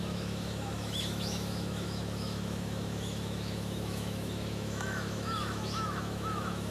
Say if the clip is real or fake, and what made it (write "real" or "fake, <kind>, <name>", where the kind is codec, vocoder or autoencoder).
fake, autoencoder, DAC-VAE